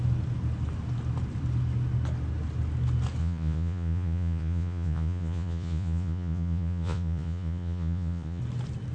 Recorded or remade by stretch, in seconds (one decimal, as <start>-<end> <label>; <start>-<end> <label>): 0.0-3.2 recorded; 3.2-8.4 remade; 8.4-8.9 recorded